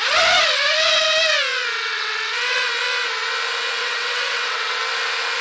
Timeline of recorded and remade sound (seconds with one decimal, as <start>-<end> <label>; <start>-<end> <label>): 0.0-1.5 recorded; 1.5-2.7 remade; 2.7-3.8 recorded; 3.8-4.8 remade; 4.8-5.4 recorded